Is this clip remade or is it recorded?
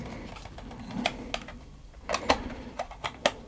recorded